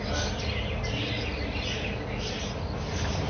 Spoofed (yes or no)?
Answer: no